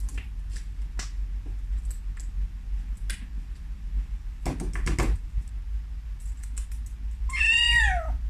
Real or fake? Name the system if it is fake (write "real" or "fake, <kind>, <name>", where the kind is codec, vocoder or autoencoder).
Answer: real